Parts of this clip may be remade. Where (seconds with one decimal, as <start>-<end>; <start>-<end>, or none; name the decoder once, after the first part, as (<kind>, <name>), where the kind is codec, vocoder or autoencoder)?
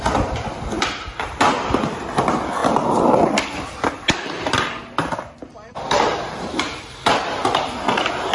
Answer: none